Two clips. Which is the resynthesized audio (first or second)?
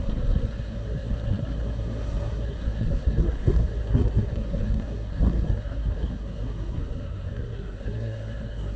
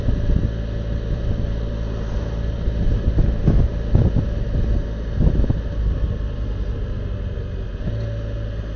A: first